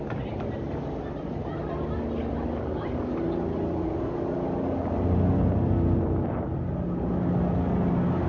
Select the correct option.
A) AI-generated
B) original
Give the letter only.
B